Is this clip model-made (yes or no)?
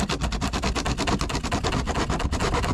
no